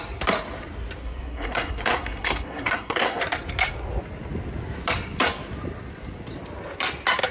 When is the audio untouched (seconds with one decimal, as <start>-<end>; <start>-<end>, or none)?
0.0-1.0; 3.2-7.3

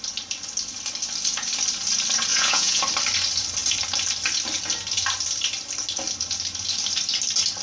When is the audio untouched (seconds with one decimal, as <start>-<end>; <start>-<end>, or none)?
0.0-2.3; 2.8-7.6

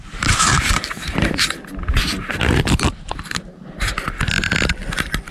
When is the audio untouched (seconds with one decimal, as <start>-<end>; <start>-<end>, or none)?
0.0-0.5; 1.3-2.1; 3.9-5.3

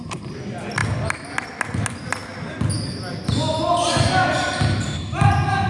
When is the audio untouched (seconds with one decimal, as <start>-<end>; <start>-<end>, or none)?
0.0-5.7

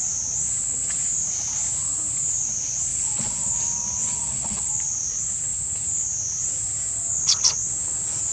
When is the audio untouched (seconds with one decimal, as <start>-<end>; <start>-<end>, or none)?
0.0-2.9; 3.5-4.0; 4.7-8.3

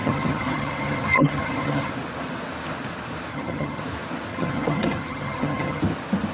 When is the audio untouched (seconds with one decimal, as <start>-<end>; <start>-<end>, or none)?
1.9-3.3; 3.8-4.3; 5.8-6.3